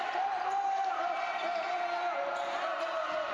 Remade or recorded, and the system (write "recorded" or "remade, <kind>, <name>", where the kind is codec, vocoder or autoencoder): recorded